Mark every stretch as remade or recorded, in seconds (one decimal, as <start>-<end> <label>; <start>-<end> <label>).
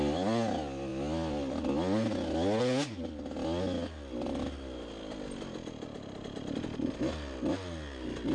0.0-8.3 recorded